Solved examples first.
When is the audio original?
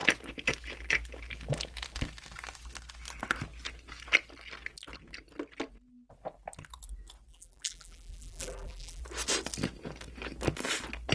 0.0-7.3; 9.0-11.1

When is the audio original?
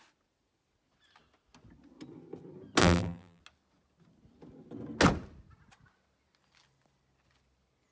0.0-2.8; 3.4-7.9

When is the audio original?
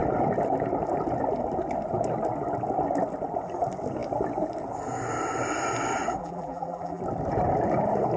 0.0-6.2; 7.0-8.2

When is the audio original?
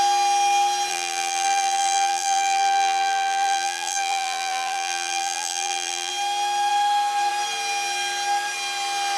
0.0-0.9; 6.1-9.2